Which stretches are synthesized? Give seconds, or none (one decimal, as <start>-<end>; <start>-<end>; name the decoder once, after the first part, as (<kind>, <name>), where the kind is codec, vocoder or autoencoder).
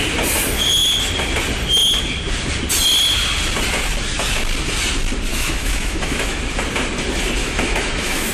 5.3-6.4 (autoencoder, DAC-VAE); 7.4-8.3